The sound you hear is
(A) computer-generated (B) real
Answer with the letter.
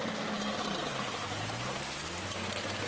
B